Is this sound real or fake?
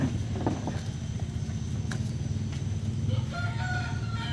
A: real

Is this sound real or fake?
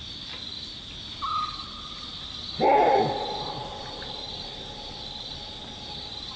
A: real